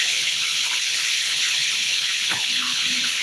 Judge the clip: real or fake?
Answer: fake